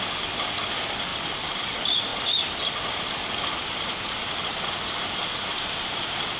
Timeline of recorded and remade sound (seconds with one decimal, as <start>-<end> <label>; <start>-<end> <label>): 0.0-1.1 recorded; 1.1-1.7 remade; 1.7-6.4 recorded